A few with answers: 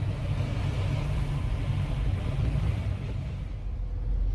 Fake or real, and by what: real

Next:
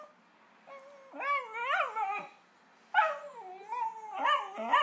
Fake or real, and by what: real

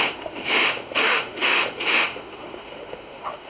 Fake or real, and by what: fake, autoencoder, DAC-VAE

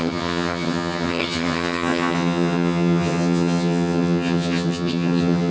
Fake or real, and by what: fake, vocoder, HiFi-GAN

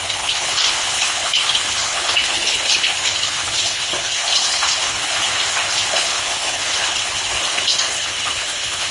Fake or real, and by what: fake, codec, HILCodec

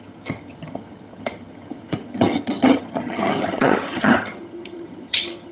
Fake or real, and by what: fake, vocoder, HiFi-GAN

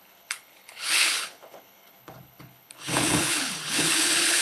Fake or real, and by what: fake, codec, HILCodec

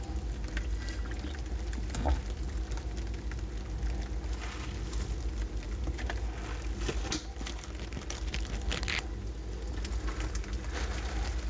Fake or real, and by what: real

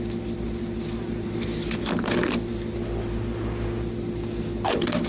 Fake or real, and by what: real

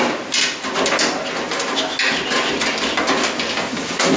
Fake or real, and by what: real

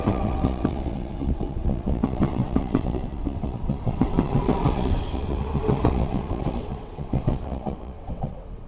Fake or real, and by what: fake, vocoder, WaveNeXt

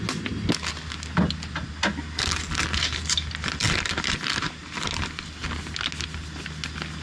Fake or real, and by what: real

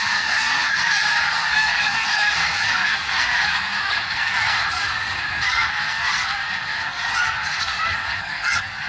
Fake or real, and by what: fake, codec, SNAC